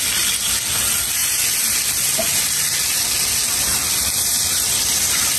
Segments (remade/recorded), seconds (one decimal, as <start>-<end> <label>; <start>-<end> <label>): 0.0-5.4 recorded